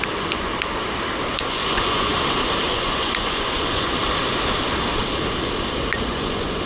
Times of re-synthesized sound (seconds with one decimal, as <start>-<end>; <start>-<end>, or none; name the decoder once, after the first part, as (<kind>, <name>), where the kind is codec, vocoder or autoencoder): 0.0-0.5 (vocoder, Vocos); 1.3-2.1; 2.7-4.0; 6.1-6.7